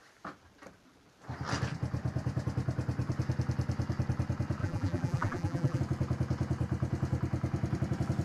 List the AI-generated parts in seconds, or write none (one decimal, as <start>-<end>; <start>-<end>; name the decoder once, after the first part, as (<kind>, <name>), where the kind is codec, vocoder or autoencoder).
4.6-5.8 (vocoder, BigVGAN v2)